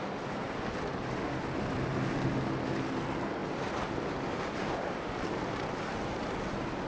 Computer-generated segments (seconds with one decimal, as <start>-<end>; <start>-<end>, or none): none